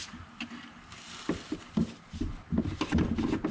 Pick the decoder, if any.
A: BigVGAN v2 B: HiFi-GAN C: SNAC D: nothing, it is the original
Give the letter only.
D